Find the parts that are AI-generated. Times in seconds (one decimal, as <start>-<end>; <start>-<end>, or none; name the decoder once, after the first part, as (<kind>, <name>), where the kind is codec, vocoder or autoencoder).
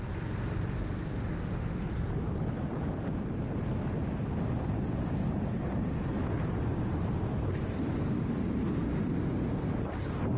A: 1.4-1.9 (autoencoder, DAC-VAE)